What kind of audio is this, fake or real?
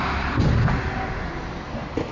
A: real